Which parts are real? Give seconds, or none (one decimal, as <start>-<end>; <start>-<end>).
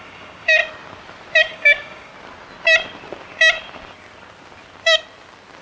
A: 0.6-1.4; 2.1-5.6